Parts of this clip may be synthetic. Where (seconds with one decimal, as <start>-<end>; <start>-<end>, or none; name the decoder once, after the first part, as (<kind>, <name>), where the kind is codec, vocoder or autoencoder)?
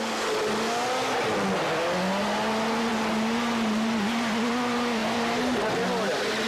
2.9-4.2 (vocoder, BigVGAN v2); 5.0-5.6